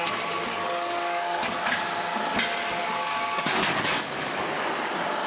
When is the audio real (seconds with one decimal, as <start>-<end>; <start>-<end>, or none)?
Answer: 0.0-0.5; 1.9-2.8; 4.4-5.3